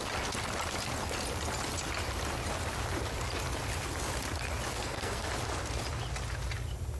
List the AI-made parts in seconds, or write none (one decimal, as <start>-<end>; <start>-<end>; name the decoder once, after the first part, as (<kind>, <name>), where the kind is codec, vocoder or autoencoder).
4.7-5.3 (codec, SNAC)